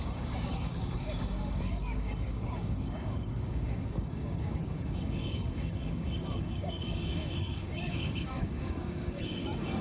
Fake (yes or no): yes